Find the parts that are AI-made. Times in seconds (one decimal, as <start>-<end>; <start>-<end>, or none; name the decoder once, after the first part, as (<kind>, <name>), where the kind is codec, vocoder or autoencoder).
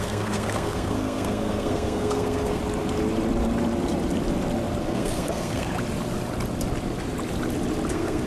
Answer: 0.0-2.6 (codec, SNAC); 4.8-5.7; 7.9-8.3